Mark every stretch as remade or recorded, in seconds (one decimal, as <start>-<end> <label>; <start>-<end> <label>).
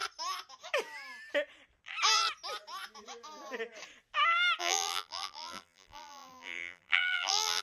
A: 0.0-4.6 recorded; 4.6-7.6 remade